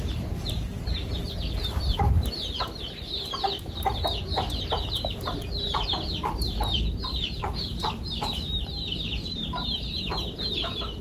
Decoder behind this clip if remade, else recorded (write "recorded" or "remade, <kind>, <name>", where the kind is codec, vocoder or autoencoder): remade, vocoder, BigVGAN v2